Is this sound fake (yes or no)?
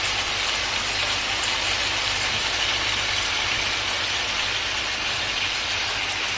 no